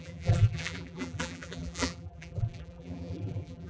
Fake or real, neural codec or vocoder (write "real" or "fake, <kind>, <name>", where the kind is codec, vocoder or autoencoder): fake, vocoder, BigVGAN v2